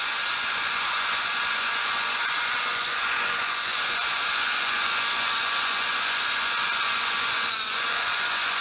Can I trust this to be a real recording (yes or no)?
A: no